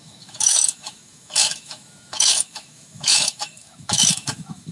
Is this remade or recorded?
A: remade